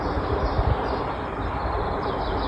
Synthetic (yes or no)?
yes